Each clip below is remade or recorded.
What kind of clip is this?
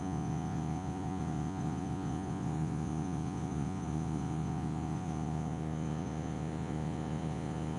remade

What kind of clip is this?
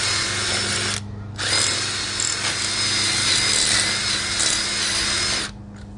recorded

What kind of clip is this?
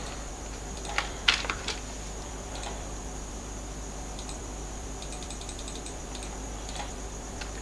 remade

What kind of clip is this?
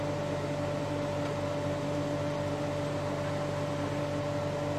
recorded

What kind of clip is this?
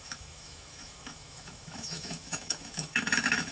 remade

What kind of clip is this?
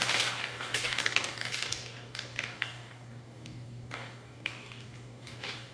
remade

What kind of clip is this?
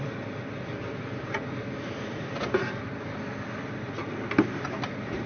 recorded